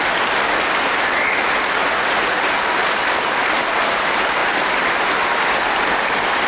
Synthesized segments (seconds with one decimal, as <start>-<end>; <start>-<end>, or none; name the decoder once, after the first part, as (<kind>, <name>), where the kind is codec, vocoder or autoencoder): 1.8-2.5 (vocoder, Vocos)